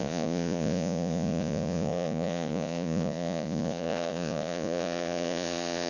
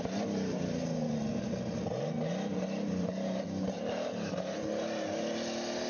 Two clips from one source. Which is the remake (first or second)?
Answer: first